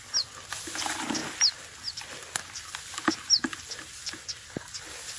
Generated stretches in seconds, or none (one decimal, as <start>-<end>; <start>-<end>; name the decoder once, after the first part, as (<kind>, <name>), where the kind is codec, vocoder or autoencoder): none